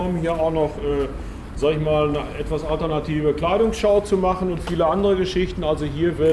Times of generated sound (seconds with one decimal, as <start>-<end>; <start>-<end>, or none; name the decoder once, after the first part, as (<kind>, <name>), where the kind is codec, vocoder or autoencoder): none